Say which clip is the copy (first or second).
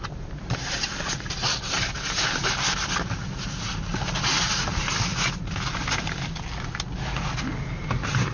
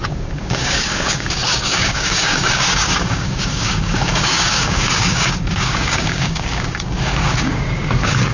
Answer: second